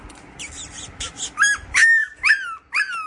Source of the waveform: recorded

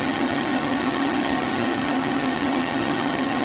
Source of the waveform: remade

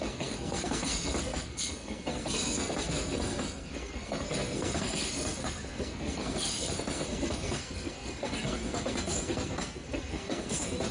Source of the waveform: remade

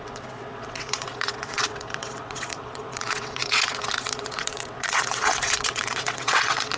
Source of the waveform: remade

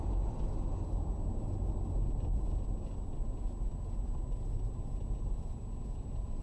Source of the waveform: recorded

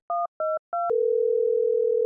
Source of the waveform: recorded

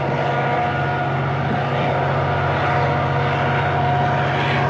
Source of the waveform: recorded